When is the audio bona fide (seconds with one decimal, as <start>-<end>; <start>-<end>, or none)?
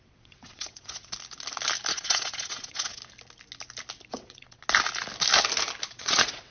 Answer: 1.1-1.9; 3.0-4.1; 4.6-5.9